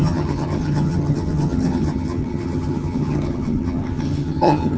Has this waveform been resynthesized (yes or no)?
yes